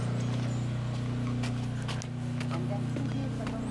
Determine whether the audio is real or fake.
real